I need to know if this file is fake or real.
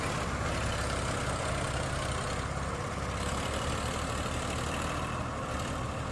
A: real